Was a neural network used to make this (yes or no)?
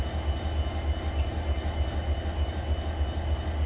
no